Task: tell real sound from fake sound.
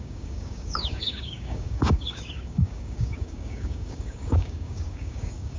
fake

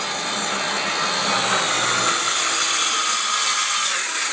real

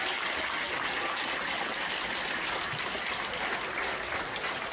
real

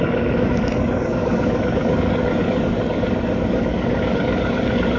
fake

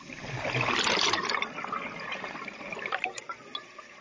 real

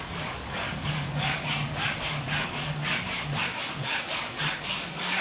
fake